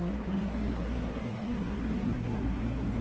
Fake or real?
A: fake